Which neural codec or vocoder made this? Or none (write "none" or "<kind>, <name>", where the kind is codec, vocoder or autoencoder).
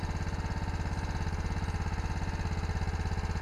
none